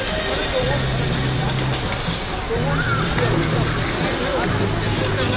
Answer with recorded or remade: recorded